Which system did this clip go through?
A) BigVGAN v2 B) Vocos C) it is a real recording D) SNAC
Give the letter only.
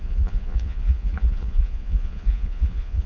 B